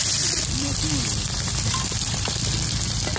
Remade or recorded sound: remade